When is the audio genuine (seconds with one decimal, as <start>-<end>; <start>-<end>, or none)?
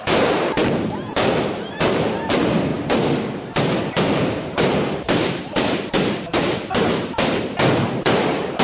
2.7-3.9